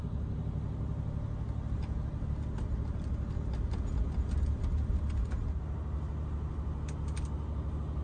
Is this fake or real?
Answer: real